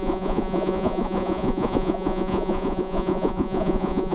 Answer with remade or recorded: remade